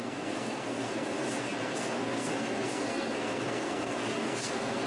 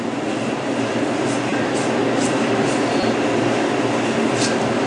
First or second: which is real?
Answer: second